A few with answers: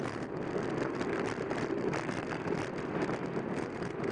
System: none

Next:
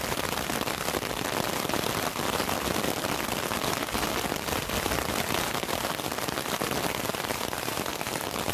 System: none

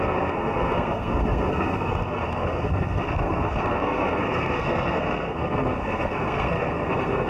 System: codec, SNAC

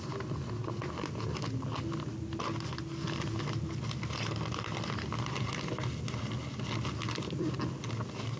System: none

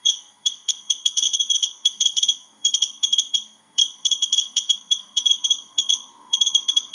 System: codec, SNAC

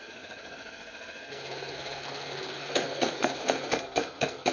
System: codec, SNAC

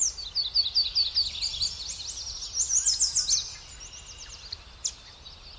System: none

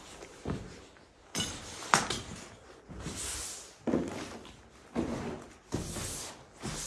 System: none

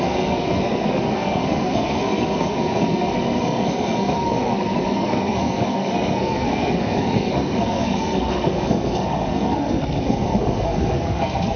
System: codec, SNAC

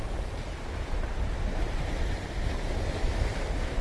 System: none